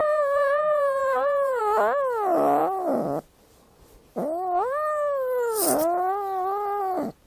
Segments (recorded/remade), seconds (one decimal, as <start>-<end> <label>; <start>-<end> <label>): 0.0-1.6 remade; 1.6-7.3 recorded